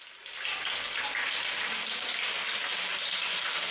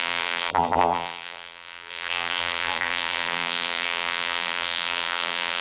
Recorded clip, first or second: first